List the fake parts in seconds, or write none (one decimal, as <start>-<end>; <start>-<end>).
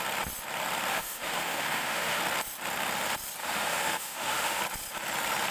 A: 0.9-2.2; 3.4-4.6